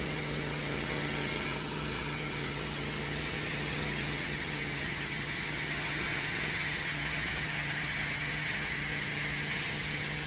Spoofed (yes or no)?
yes